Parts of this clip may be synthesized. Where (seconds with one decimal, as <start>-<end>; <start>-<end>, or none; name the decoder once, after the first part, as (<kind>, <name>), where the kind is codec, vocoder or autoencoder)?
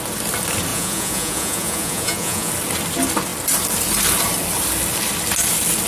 0.7-2.5 (vocoder, Vocos)